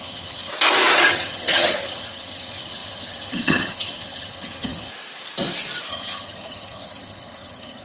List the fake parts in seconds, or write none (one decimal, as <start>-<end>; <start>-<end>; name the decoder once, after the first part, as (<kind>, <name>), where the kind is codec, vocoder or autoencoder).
0.0-0.5 (vocoder, HiFi-GAN); 1.1-4.9; 5.9-7.8